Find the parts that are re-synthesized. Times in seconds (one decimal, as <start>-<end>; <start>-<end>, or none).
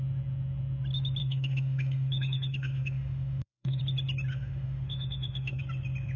1.2-3.8; 4.3-5.6